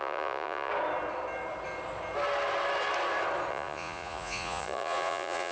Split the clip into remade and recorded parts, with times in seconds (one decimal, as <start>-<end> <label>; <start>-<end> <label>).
0.0-0.7 remade; 0.7-3.5 recorded; 3.5-5.5 remade